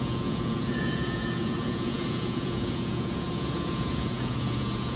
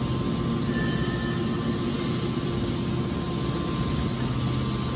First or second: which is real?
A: second